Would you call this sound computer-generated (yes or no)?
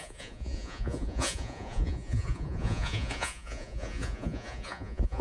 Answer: yes